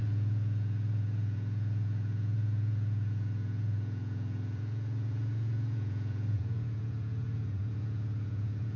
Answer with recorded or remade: remade